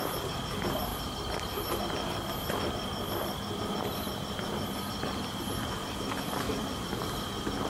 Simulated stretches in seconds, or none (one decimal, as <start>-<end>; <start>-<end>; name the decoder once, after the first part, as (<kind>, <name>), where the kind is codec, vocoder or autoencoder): 6.5-7.0 (vocoder, BigVGAN v2)